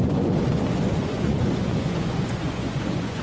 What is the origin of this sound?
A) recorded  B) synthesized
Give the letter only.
B